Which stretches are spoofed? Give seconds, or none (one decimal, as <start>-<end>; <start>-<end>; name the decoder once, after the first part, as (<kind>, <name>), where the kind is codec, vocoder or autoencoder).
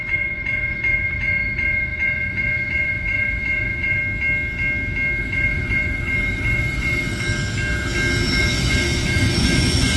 0.0-4.0 (vocoder, Vocos); 5.2-7.0; 8.4-10.0